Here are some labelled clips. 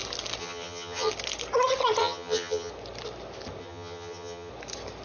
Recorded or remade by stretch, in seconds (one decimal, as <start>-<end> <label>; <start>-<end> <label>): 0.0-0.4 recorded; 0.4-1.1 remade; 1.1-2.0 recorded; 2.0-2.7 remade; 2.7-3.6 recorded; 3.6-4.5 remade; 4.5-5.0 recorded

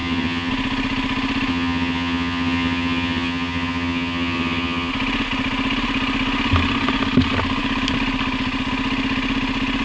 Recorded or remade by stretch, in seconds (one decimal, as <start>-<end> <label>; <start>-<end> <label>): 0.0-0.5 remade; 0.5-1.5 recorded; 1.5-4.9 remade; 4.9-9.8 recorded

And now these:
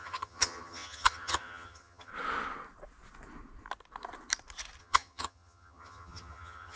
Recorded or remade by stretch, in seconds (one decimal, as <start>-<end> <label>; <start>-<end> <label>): 0.0-2.1 remade; 2.1-4.8 recorded; 4.8-6.8 remade

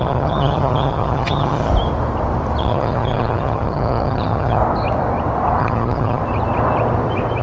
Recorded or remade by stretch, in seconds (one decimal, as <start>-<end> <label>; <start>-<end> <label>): 0.0-1.7 remade; 1.7-2.6 recorded; 2.6-4.6 remade; 4.6-5.6 recorded; 5.6-6.2 remade; 6.2-7.4 recorded

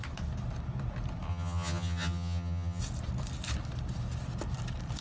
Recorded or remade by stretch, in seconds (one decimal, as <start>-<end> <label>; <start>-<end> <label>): 0.0-1.3 recorded; 1.3-2.8 remade; 2.8-5.0 recorded